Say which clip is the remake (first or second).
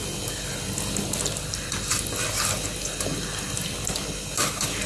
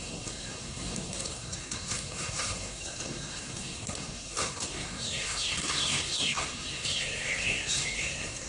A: second